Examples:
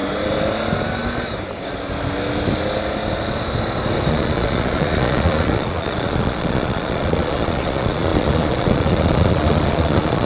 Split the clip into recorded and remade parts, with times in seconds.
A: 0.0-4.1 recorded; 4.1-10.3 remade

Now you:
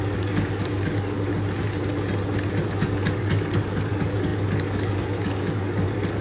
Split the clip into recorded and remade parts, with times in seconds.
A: 0.0-1.3 remade; 1.3-2.5 recorded; 2.5-6.2 remade

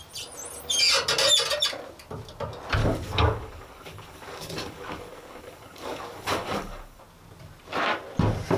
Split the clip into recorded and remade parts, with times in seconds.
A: 0.0-2.8 recorded; 2.8-7.0 remade; 7.0-8.6 recorded

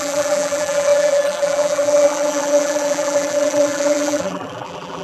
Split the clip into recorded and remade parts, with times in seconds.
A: 0.0-5.0 remade

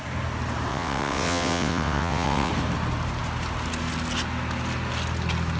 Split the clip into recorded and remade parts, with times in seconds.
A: 0.0-0.7 recorded; 0.7-2.5 remade; 2.5-5.6 recorded

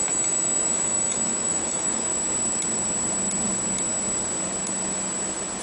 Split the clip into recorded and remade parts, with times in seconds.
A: 0.0-2.1 remade; 2.1-5.6 recorded

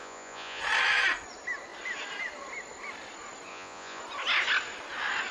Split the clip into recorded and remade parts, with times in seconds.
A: 0.0-0.6 remade; 0.6-3.5 recorded; 3.5-4.0 remade; 4.0-5.3 recorded